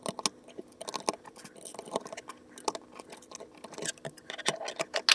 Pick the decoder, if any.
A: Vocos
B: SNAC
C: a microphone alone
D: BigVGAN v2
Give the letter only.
C